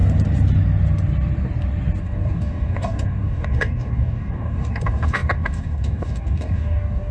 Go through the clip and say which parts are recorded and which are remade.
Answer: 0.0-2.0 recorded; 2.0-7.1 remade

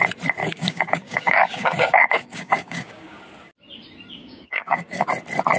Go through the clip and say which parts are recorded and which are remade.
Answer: 0.0-0.4 recorded; 0.4-3.2 remade; 3.2-4.2 recorded; 4.2-5.1 remade; 5.1-5.6 recorded

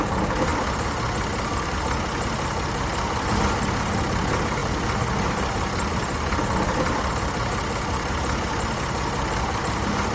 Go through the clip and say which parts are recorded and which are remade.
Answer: 0.0-10.1 recorded

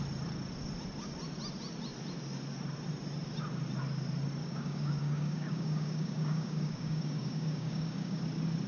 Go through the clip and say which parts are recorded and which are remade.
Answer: 0.0-4.4 recorded; 4.4-8.2 remade; 8.2-8.7 recorded

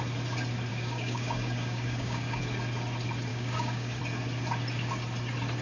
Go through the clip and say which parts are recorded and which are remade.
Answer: 0.0-0.7 recorded; 0.7-2.4 remade; 2.4-3.3 recorded; 3.3-4.0 remade; 4.0-5.6 recorded

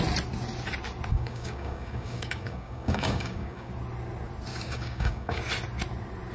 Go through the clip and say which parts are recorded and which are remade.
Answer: 0.0-1.1 recorded; 1.1-3.7 remade; 3.7-4.5 recorded; 4.5-5.4 remade; 5.4-6.3 recorded